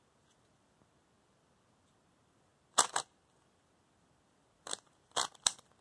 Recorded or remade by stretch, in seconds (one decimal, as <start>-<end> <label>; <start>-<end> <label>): 0.0-2.5 remade; 2.5-3.3 recorded; 3.3-5.8 remade